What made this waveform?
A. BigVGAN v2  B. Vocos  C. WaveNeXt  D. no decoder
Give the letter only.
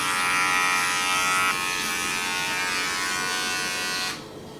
D